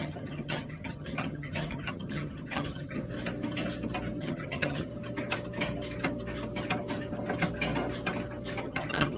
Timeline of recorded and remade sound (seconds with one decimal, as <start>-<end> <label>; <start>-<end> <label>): 0.0-3.0 remade; 3.0-4.2 recorded; 4.2-4.9 remade; 4.9-8.6 recorded; 8.6-9.2 remade